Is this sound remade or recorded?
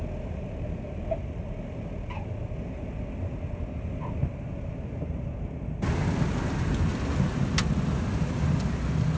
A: recorded